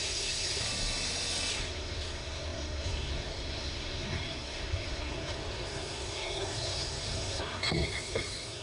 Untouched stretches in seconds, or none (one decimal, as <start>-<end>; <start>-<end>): 0.6-1.5